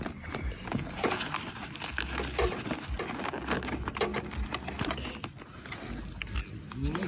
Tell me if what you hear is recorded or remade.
recorded